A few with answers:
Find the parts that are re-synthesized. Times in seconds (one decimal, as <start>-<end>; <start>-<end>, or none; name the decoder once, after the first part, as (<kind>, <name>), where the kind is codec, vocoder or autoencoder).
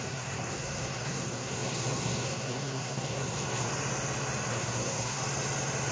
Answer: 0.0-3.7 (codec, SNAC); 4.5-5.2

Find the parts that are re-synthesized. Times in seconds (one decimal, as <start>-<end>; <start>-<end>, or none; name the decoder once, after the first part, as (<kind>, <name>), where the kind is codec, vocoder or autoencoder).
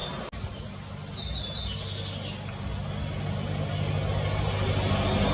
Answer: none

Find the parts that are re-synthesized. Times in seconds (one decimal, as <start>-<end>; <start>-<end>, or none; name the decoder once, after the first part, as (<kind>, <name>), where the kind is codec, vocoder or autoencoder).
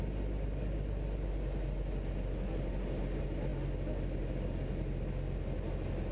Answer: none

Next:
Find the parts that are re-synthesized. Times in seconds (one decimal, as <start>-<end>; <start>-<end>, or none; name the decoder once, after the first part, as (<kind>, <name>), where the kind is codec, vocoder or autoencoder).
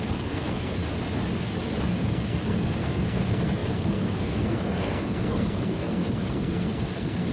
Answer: 0.0-0.8 (codec, SNAC); 1.8-7.3